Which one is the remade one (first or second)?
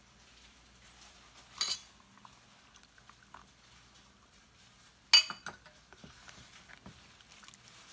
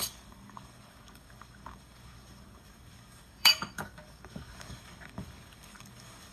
second